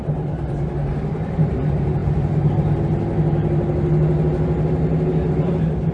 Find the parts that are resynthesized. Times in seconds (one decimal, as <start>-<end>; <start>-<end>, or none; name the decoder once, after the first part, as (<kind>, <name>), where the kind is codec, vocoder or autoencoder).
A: none